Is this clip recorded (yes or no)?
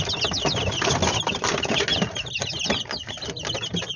yes